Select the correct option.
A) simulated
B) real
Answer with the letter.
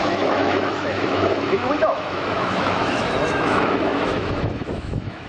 A